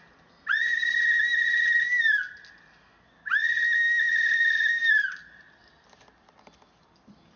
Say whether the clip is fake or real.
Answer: real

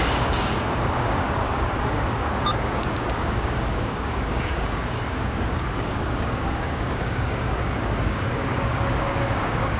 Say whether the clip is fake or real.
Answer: fake